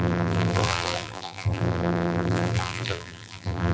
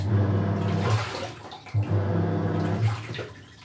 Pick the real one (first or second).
second